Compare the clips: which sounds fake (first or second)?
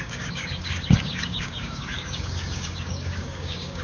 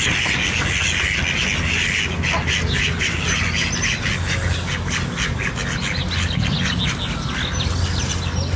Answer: first